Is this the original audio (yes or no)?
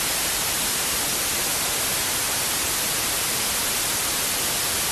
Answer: yes